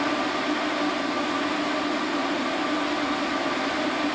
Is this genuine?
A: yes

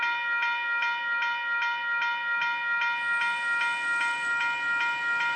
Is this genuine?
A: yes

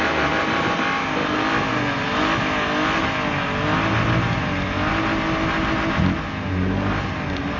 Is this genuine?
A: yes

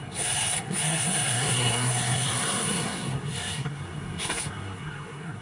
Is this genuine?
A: no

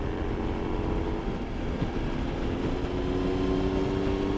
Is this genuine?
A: yes